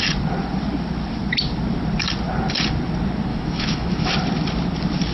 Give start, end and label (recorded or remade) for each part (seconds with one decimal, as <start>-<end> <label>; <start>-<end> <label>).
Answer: 0.0-3.3 recorded; 3.3-4.1 remade; 4.1-5.1 recorded